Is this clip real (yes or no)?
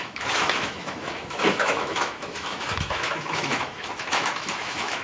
no